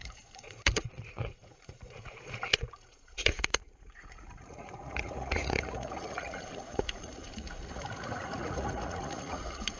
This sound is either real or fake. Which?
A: fake